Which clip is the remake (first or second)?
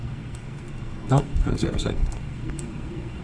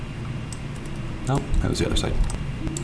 first